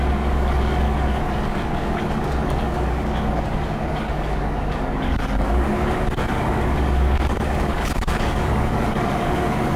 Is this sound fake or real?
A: fake